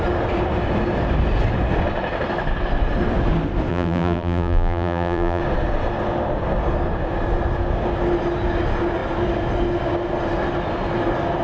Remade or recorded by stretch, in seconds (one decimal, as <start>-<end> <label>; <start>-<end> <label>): 0.0-3.7 recorded; 3.7-5.4 remade; 5.4-11.4 recorded